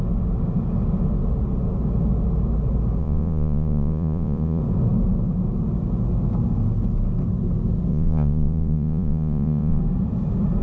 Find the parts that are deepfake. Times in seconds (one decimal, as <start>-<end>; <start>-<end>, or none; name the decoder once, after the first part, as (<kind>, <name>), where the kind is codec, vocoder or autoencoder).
3.0-4.6 (vocoder, Vocos); 7.9-9.8